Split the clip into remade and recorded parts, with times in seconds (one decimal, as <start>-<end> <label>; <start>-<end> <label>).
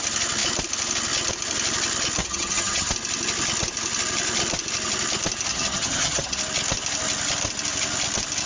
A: 0.0-2.2 recorded; 2.2-2.9 remade; 2.9-5.5 recorded; 5.5-6.4 remade; 6.4-8.5 recorded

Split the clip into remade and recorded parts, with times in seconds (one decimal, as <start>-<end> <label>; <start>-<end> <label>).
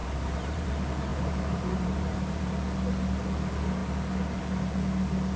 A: 0.0-0.7 remade; 0.7-1.1 recorded; 1.1-2.5 remade; 2.5-5.4 recorded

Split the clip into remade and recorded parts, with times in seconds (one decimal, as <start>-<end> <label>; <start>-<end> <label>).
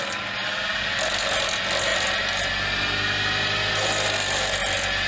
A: 0.0-5.1 recorded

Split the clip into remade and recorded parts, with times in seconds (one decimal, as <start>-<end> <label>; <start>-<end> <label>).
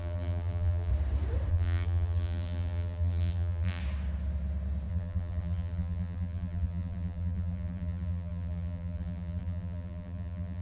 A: 0.0-0.9 remade; 0.9-1.5 recorded; 1.5-3.8 remade; 3.8-4.9 recorded; 4.9-10.6 remade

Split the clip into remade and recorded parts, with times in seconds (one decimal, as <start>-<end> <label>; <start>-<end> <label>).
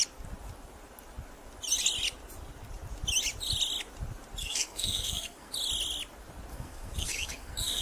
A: 0.0-4.4 recorded; 4.4-5.5 remade; 5.5-6.5 recorded; 6.5-7.8 remade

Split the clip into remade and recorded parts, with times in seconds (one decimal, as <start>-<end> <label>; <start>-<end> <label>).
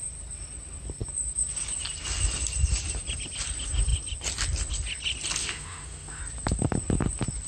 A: 0.0-5.4 recorded; 5.4-6.2 remade; 6.2-7.5 recorded